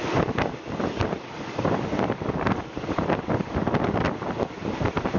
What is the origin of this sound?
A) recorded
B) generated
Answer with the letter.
A